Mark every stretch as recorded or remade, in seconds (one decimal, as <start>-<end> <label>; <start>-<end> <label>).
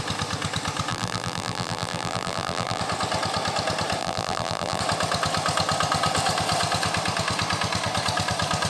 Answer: 0.0-0.9 recorded; 0.9-2.8 remade; 2.8-4.0 recorded; 4.0-4.8 remade; 4.8-8.7 recorded